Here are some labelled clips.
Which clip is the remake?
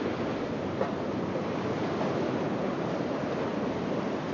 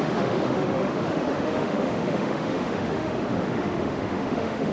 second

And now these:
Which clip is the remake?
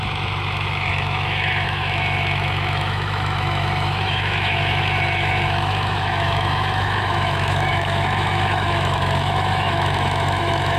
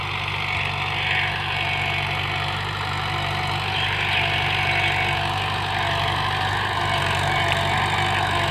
first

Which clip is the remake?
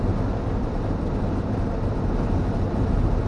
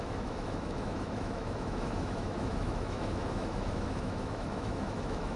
second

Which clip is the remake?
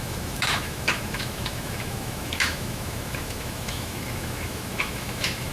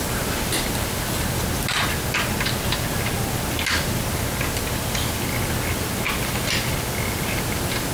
first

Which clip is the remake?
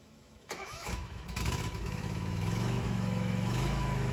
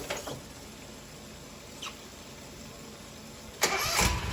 first